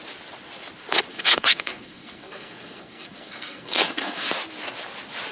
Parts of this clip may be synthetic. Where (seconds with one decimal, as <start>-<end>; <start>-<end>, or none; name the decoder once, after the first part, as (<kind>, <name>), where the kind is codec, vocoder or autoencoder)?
1.1-4.3 (codec, SNAC)